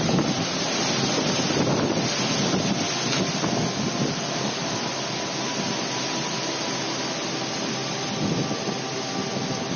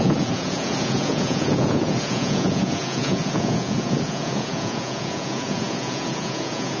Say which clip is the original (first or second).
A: first